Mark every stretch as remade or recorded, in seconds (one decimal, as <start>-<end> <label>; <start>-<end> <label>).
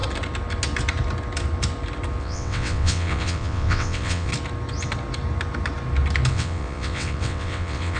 0.0-2.2 recorded; 2.2-4.3 remade; 4.3-6.3 recorded; 6.3-8.0 remade